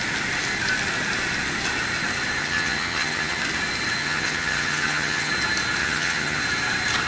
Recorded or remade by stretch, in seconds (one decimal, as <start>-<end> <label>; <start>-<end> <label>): 0.0-2.4 recorded; 2.4-3.4 remade; 3.4-4.0 recorded; 4.0-5.3 remade; 5.3-5.8 recorded; 5.8-6.4 remade; 6.4-7.1 recorded